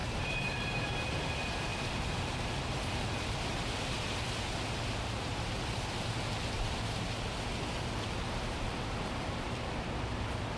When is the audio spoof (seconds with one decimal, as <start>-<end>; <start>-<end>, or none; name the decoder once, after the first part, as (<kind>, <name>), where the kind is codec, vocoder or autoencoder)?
0.0-0.7 (vocoder, BigVGAN v2); 1.7-3.0